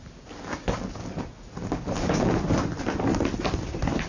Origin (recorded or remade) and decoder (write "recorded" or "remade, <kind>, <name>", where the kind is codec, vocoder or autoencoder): recorded